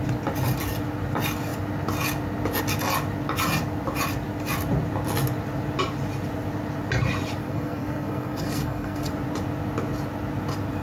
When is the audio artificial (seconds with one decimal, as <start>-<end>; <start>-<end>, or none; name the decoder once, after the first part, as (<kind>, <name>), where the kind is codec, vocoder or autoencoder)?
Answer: 7.4-9.1 (codec, SNAC)